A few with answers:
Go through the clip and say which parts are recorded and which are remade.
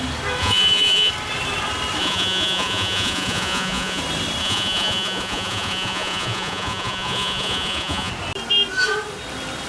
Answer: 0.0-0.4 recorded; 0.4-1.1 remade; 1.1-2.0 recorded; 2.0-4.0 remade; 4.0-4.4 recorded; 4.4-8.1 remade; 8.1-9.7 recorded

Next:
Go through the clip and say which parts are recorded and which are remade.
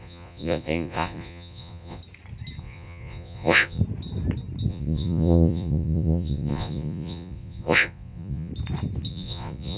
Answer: 0.0-2.0 remade; 2.0-2.6 recorded; 2.6-3.8 remade; 3.8-4.7 recorded; 4.7-8.5 remade; 8.5-9.1 recorded; 9.1-9.8 remade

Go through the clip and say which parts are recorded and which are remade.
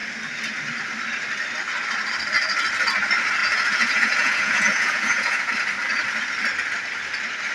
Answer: 0.0-3.4 recorded; 3.4-5.5 remade; 5.5-7.5 recorded